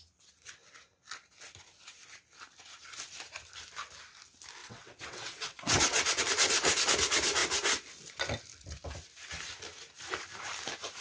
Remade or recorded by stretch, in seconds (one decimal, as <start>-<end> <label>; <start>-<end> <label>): 0.0-4.6 recorded; 4.6-6.2 remade; 6.2-11.0 recorded